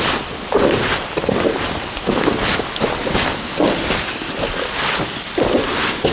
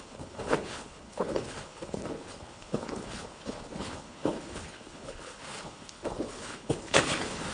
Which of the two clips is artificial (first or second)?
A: second